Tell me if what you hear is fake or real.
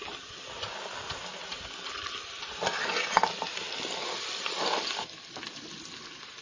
real